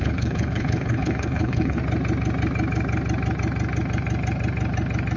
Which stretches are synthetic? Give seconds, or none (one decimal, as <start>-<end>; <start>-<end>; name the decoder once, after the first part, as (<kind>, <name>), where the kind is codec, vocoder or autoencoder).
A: 0.0-1.8 (codec, HILCodec)